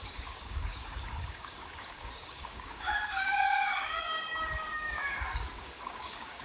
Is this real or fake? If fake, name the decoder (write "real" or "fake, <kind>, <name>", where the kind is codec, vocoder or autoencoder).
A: fake, codec, DAC